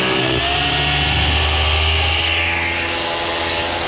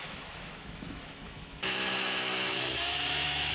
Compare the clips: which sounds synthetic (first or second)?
second